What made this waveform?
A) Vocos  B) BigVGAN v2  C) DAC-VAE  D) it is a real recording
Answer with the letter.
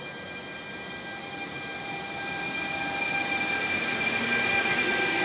D